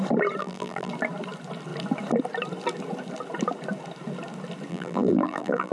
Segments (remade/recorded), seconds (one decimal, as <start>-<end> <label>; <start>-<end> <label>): 0.0-0.4 recorded; 0.4-0.9 remade; 0.9-4.7 recorded; 4.7-5.7 remade